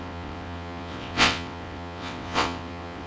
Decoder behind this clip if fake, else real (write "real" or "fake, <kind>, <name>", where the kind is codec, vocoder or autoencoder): fake, vocoder, WaveNeXt